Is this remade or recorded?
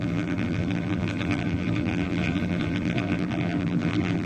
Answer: remade